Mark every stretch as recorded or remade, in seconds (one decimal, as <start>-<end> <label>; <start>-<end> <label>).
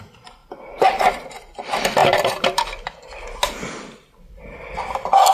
0.0-2.0 recorded; 2.0-3.2 remade; 3.2-5.3 recorded